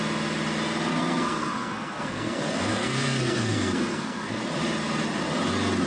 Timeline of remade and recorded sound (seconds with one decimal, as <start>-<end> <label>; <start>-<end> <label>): 0.0-0.9 recorded; 0.9-4.4 remade; 4.4-5.9 recorded